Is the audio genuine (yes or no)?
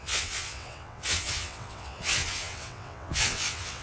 no